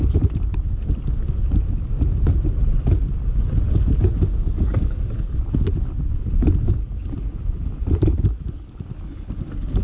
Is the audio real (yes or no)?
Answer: yes